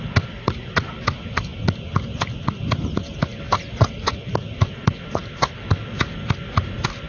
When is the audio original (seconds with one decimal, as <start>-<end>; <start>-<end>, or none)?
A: 0.0-3.3; 4.1-5.2; 5.8-7.1